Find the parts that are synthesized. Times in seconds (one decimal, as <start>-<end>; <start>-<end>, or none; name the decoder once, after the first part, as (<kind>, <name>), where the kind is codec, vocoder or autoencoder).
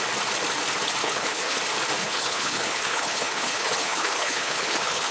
1.0-1.6 (codec, HILCodec); 2.0-5.1